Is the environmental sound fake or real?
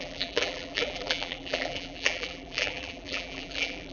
fake